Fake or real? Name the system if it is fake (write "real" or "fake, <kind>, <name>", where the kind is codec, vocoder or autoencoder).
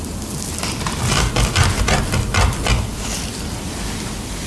real